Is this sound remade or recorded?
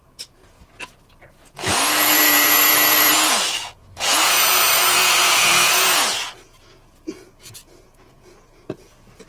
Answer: remade